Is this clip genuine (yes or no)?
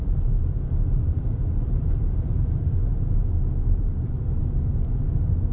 yes